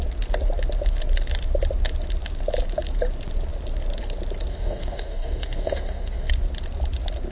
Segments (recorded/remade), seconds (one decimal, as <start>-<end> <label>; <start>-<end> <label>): 0.0-4.5 recorded; 4.5-6.3 remade; 6.3-7.3 recorded